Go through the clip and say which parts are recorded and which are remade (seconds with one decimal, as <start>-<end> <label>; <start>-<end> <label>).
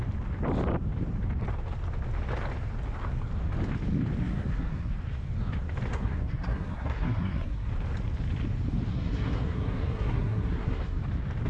0.0-4.2 recorded; 4.2-4.9 remade; 4.9-5.9 recorded; 5.9-7.7 remade; 7.7-8.9 recorded; 8.9-11.0 remade; 11.0-11.5 recorded